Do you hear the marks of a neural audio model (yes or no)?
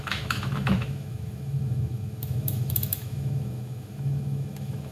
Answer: yes